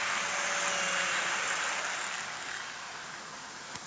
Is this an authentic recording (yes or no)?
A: yes